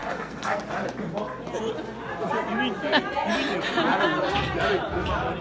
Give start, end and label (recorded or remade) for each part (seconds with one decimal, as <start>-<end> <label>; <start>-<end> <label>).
0.0-0.6 remade; 0.6-5.4 recorded